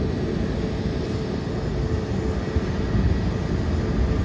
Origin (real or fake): real